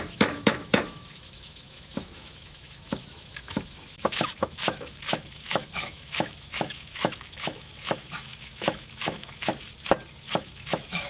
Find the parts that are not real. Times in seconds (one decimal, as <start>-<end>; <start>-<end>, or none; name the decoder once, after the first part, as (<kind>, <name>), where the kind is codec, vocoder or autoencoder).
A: 0.0-9.5 (autoencoder, DAC-VAE); 10.4-11.1